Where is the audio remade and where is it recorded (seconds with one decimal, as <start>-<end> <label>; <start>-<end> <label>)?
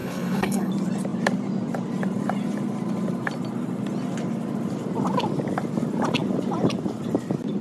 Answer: 0.0-0.7 remade; 0.7-7.6 recorded